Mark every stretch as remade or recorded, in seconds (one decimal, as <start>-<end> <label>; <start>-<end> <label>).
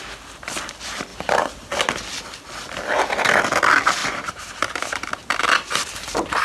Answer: 0.0-4.0 recorded; 4.0-5.1 remade; 5.1-6.4 recorded